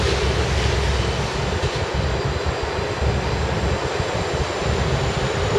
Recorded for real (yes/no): yes